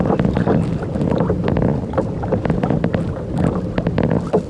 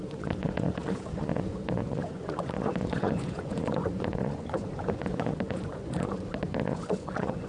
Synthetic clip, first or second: second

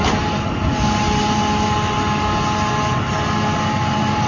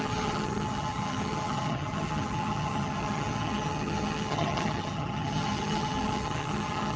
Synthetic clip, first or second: second